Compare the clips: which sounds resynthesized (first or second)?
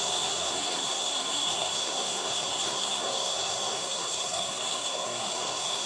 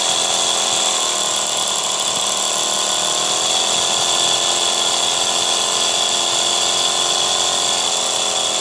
first